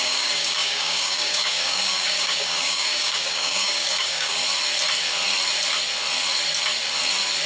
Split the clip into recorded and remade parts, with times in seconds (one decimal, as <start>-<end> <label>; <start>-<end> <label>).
0.0-4.4 remade; 4.4-7.5 recorded